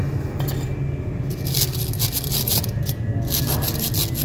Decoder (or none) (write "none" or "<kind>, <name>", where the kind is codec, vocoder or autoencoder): none